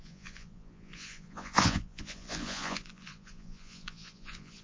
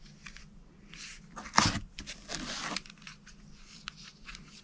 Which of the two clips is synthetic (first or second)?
first